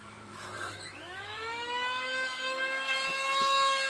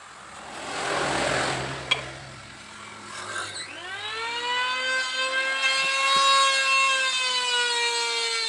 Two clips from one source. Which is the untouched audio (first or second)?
second